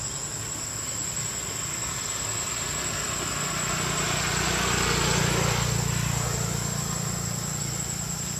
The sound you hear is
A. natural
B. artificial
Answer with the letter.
A